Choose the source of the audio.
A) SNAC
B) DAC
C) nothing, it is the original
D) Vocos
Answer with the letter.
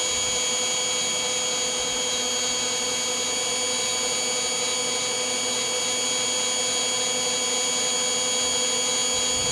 C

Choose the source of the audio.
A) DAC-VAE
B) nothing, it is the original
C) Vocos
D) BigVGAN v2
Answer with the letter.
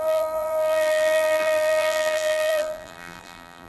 D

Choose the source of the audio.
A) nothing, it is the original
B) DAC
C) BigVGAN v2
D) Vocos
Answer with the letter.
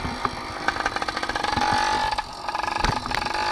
A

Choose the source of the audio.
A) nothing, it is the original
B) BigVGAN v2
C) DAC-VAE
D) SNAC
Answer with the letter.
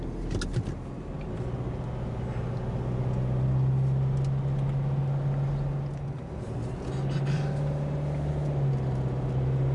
A